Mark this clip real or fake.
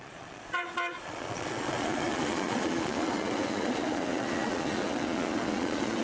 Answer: fake